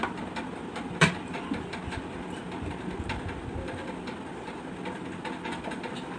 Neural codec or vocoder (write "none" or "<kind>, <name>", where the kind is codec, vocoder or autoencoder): none